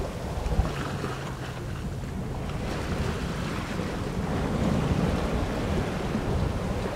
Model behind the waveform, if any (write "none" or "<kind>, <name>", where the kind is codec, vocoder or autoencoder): none